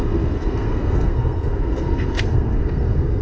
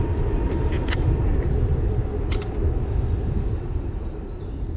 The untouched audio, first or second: second